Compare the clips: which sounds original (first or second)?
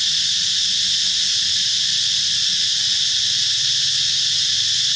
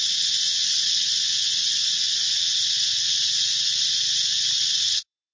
first